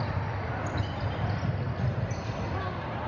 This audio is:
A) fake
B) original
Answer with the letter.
B